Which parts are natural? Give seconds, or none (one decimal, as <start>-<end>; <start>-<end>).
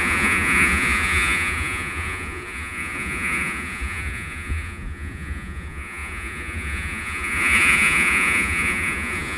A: none